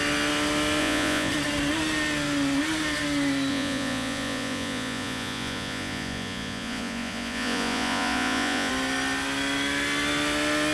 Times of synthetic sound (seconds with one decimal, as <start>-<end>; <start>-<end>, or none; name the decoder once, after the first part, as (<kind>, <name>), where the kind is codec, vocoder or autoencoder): 0.8-1.3 (vocoder, Vocos); 3.5-8.7